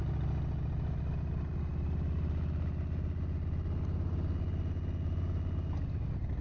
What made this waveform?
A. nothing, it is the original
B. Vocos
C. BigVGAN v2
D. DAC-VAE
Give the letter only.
A